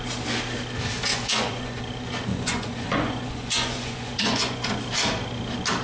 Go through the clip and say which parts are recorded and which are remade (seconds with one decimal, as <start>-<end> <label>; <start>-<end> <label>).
0.0-1.1 recorded; 1.1-1.8 remade; 1.8-2.3 recorded; 2.3-4.7 remade; 4.7-5.8 recorded